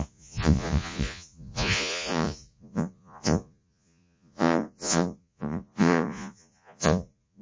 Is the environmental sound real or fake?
fake